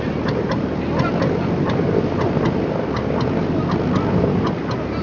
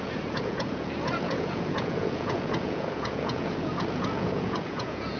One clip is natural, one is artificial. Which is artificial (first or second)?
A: second